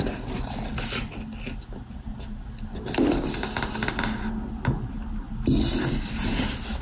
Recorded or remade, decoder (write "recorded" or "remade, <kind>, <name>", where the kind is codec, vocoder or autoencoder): recorded